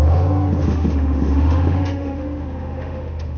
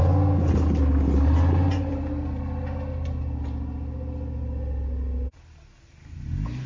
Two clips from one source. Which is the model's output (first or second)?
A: first